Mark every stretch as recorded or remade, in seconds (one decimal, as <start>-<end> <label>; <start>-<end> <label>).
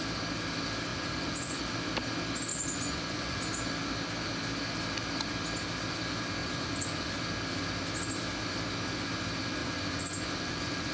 0.0-0.9 recorded; 0.9-1.6 remade; 1.6-2.5 recorded; 2.5-3.4 remade; 3.4-6.4 recorded; 6.4-7.1 remade; 7.1-9.6 recorded; 9.6-10.9 remade